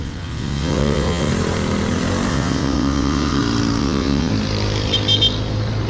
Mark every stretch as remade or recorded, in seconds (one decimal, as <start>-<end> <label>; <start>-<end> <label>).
0.0-1.3 remade; 1.3-2.3 recorded; 2.3-3.4 remade; 3.4-3.8 recorded; 3.8-4.3 remade; 4.3-5.9 recorded